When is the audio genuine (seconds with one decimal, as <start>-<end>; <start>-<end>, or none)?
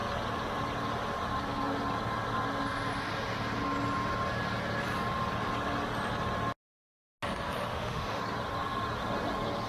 0.0-7.7; 8.2-9.7